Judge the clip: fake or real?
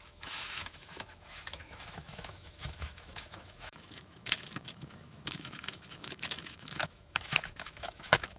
fake